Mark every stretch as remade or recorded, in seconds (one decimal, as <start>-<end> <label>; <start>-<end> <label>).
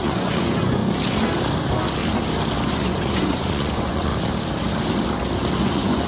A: 0.0-0.8 remade; 0.8-2.7 recorded; 2.7-4.1 remade; 4.1-5.6 recorded; 5.6-6.1 remade